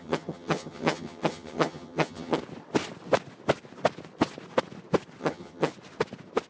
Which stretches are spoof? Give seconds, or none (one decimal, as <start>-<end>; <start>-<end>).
0.0-2.4; 5.2-5.7

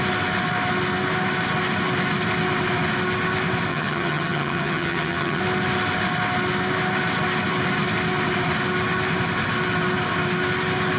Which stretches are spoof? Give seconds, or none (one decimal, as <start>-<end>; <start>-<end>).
3.7-5.4

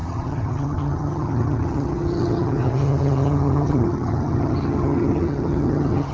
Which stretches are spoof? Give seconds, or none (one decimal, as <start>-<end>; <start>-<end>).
0.0-6.1

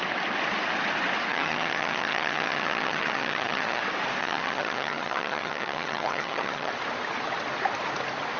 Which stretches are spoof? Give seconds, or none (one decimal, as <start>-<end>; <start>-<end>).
1.3-3.8; 4.2-6.7

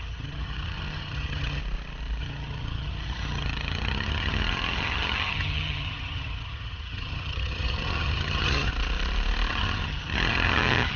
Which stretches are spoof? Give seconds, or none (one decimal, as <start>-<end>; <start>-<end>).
0.0-1.6; 2.2-8.7; 9.5-11.0

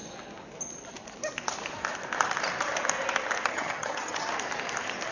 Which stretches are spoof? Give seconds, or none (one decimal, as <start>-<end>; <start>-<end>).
3.5-4.3

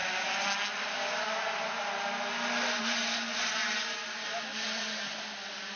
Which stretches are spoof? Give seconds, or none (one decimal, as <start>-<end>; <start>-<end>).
none

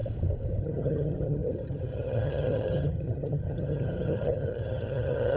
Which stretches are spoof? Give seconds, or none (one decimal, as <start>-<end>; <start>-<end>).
0.6-5.4